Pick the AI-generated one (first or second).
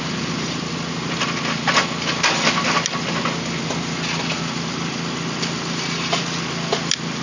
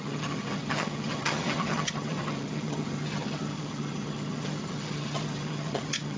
second